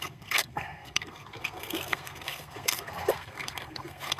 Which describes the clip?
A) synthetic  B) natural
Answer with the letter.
A